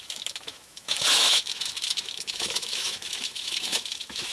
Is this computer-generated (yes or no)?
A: yes